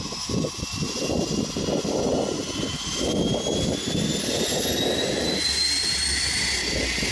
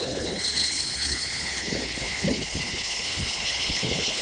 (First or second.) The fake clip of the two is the second